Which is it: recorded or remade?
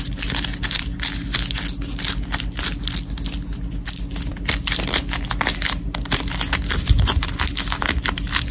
recorded